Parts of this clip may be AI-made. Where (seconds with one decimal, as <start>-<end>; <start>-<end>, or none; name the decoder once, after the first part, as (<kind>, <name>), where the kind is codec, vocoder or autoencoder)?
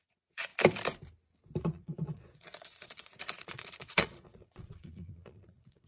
0.0-0.5 (vocoder, Vocos); 1.6-5.9